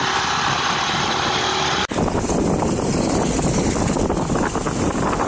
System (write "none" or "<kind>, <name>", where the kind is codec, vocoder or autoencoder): vocoder, BigVGAN v2